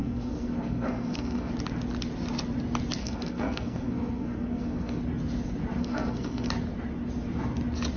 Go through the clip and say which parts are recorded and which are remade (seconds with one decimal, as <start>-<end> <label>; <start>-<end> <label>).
0.0-1.5 remade; 1.5-3.0 recorded; 3.0-5.0 remade; 5.0-5.8 recorded; 5.8-6.5 remade; 6.5-8.0 recorded